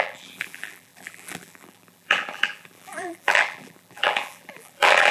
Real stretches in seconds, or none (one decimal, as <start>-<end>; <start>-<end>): none